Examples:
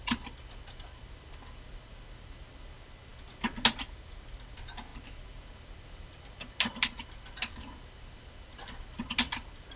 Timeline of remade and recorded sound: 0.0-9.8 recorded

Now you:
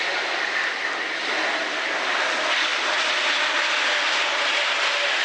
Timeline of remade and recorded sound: 0.0-5.2 recorded

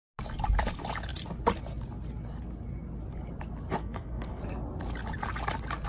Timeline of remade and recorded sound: 0.0-3.8 recorded; 3.8-4.4 remade; 4.4-5.9 recorded

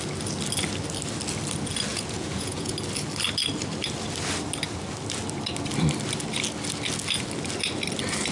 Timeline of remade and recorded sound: 0.0-1.9 recorded; 1.9-2.7 remade; 2.7-8.3 recorded